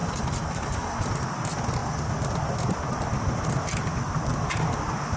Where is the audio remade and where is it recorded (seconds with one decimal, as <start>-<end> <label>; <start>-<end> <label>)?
0.0-1.1 remade; 1.1-5.2 recorded